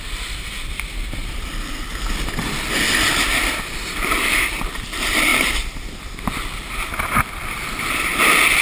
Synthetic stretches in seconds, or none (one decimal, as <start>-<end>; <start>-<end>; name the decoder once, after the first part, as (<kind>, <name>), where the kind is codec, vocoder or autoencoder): 0.0-5.3 (vocoder, BigVGAN v2); 7.2-8.6